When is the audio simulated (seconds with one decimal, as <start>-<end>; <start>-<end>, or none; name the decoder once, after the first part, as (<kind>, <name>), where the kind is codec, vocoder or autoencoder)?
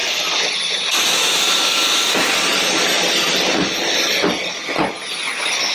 2.1-2.5 (vocoder, BigVGAN v2)